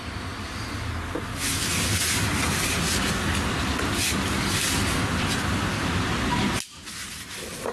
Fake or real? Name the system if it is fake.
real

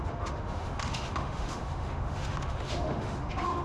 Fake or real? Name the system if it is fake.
fake, autoencoder, DAC-VAE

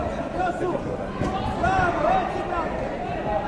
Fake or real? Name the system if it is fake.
real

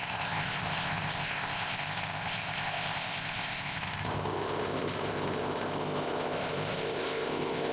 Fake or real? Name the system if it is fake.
fake, codec, ZipCodec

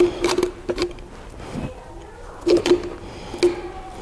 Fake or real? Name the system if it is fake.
real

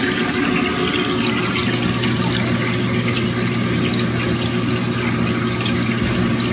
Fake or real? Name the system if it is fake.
real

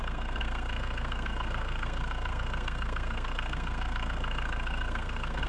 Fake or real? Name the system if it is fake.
fake, codec, SNAC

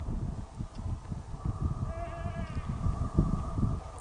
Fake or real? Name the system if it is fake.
real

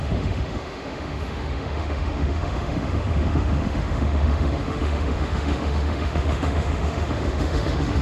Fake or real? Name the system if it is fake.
fake, autoencoder, DAC-VAE